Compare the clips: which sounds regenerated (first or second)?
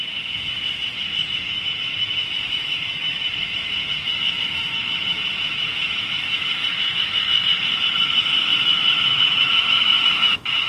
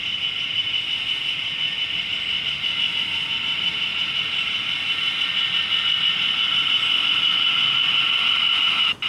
first